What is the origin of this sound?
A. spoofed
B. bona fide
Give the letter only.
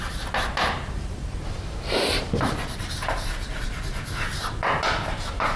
A